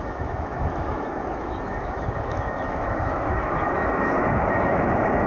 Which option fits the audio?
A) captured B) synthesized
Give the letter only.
B